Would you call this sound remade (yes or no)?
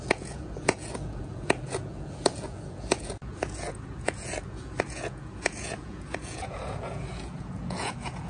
yes